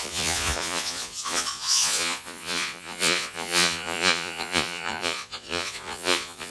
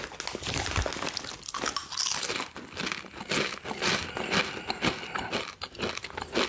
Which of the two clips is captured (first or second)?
second